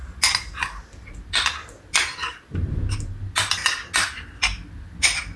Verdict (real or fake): real